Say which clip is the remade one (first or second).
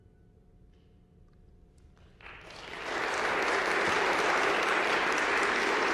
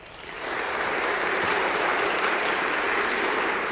second